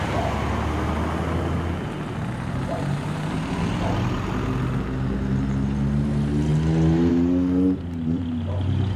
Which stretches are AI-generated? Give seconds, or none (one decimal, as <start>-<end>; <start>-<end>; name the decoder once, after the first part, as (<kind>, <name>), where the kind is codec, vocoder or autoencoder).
none